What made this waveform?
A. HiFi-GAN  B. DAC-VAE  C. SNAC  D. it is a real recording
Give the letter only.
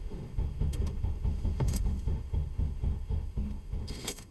B